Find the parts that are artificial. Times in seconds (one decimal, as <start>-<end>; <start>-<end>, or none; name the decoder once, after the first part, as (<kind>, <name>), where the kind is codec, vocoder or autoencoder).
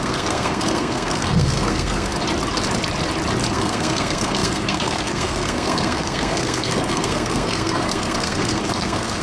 0.0-2.1 (codec, SNAC); 3.5-9.2